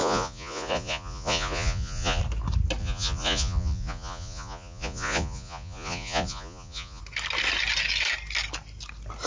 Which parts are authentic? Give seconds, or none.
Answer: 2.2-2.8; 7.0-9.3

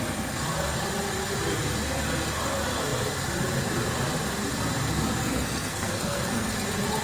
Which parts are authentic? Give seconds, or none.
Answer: 0.0-5.2; 6.5-7.0

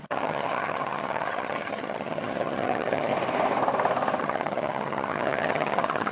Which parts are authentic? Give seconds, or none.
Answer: 3.1-4.2

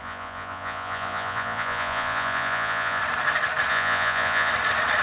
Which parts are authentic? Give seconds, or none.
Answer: 3.0-3.7; 4.5-5.0

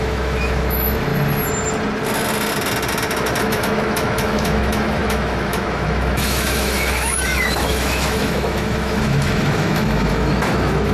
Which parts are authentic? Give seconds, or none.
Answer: 1.1-3.4